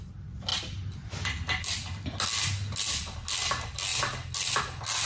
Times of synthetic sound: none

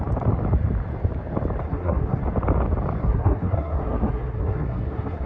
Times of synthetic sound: 1.6-2.2 (codec, SNAC); 3.0-5.3

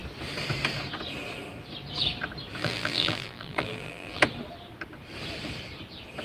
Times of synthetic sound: 2.6-4.2 (vocoder, BigVGAN v2)

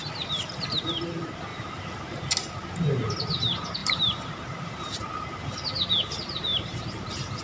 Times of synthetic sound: 1.5-2.4 (vocoder, BigVGAN v2); 3.8-5.0; 6.5-7.4

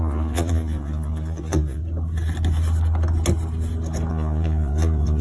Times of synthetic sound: 0.0-1.8 (vocoder, Vocos); 4.1-5.2

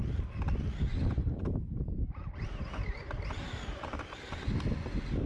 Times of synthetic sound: 3.4-4.3 (vocoder, BigVGAN v2)

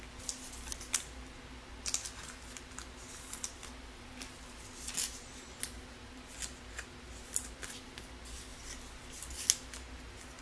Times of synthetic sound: none